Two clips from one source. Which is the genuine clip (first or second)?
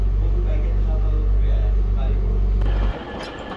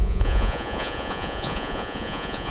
first